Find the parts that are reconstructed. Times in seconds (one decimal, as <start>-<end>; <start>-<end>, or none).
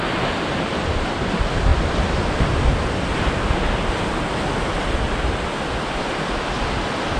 1.7-2.9